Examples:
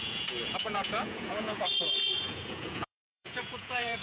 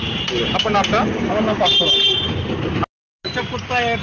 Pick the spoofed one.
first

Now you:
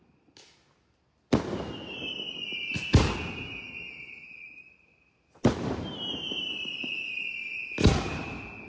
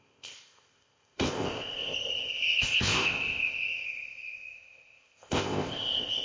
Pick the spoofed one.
second